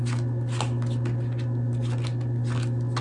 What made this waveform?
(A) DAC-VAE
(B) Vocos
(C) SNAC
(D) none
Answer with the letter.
D